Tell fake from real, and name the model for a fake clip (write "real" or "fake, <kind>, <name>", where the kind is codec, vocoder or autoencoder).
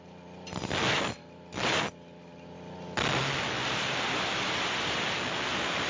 real